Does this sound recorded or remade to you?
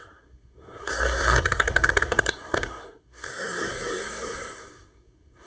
remade